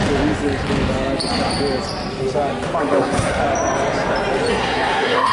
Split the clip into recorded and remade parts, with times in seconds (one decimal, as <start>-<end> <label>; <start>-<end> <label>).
0.0-2.8 recorded; 2.8-3.4 remade; 3.4-4.5 recorded; 4.5-5.3 remade